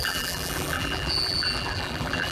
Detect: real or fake fake